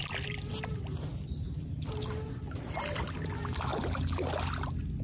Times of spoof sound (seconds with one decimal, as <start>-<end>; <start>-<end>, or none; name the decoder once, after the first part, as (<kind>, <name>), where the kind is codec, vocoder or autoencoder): none